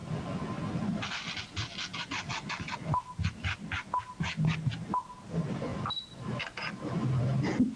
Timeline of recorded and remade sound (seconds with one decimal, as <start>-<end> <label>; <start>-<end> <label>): 0.0-7.8 recorded